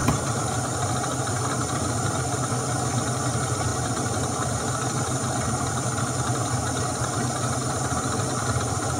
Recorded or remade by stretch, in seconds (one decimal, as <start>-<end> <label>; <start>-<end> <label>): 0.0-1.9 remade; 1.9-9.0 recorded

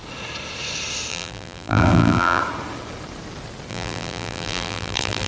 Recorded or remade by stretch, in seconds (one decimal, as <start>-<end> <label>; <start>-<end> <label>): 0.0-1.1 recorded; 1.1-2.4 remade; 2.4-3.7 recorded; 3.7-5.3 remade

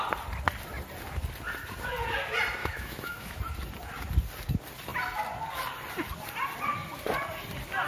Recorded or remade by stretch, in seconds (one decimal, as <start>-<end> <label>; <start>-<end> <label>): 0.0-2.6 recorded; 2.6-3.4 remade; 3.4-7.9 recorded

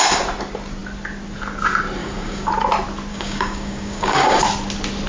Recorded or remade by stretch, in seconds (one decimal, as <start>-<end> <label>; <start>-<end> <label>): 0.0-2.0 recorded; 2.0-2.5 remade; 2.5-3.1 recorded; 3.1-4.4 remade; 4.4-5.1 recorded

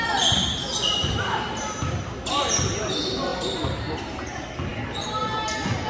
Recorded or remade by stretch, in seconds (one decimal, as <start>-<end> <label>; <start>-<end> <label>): 0.0-1.0 recorded; 1.0-2.3 remade; 2.3-5.9 recorded

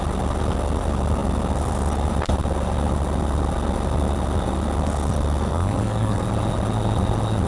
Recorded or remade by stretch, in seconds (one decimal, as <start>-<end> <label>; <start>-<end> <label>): 0.0-5.5 recorded; 5.5-6.2 remade; 6.2-7.5 recorded